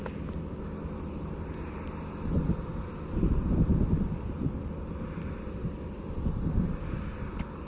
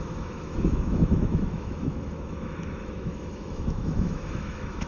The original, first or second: first